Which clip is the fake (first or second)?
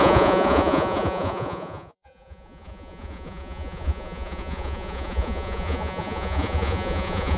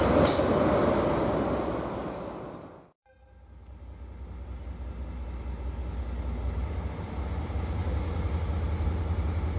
first